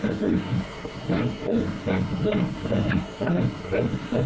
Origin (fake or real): fake